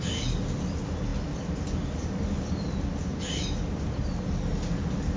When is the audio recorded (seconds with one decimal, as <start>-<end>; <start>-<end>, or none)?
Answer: 0.0-5.2